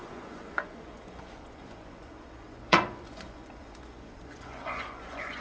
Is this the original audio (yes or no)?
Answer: no